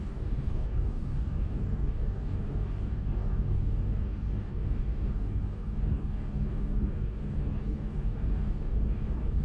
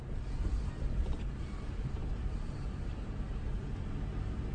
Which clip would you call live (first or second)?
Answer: second